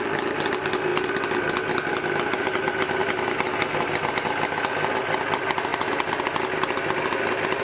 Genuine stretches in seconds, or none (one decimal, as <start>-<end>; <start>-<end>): 0.0-7.6